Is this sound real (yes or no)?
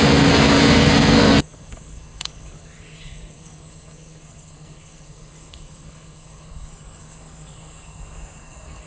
no